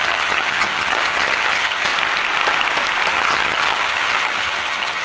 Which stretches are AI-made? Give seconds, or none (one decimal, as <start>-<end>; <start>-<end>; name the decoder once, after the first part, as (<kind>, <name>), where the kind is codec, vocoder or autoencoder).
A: 0.0-1.9 (vocoder, HiFi-GAN); 3.1-5.0